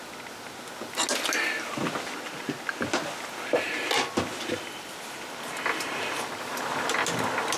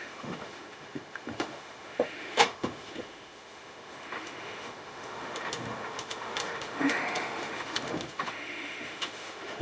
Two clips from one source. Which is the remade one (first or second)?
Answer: second